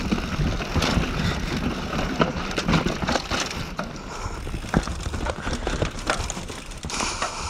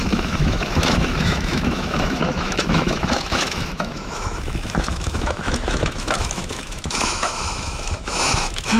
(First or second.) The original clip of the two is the first